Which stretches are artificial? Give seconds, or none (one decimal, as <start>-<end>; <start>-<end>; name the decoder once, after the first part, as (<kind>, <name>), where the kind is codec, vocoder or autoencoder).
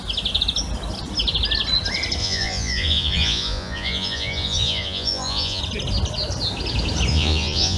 2.2-5.6 (vocoder, Vocos); 7.1-7.8